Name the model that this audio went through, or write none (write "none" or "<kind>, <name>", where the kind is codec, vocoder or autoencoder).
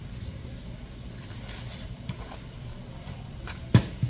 none